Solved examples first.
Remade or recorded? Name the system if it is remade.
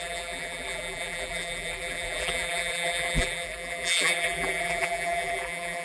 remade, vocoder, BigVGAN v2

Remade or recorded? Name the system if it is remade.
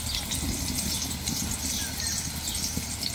recorded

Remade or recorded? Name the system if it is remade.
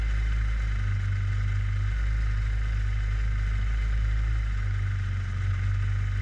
recorded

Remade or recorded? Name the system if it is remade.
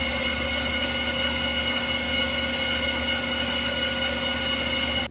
recorded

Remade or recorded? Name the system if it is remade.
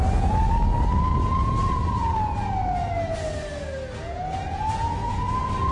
recorded